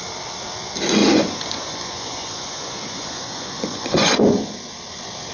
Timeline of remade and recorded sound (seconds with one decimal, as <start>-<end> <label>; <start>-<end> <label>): 0.0-1.0 recorded; 1.0-4.2 remade; 4.2-5.3 recorded